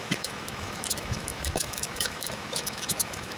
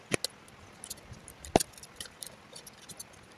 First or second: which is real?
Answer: second